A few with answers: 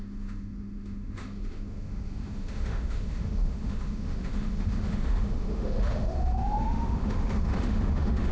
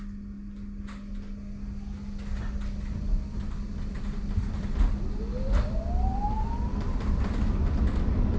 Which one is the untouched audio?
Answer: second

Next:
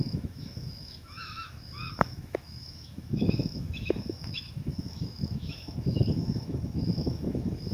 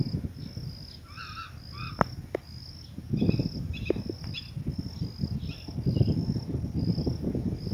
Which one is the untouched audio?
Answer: second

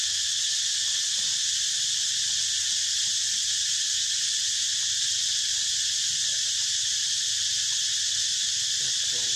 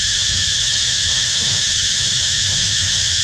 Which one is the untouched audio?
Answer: first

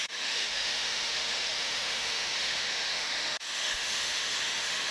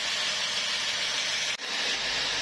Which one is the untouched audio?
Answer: second